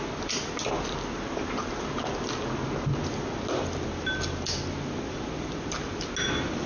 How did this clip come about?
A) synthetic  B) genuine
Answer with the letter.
B